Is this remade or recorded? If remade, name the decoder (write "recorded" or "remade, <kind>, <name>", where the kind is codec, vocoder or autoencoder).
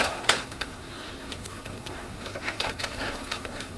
remade, codec, SNAC